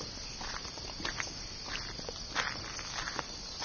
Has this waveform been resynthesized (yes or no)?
no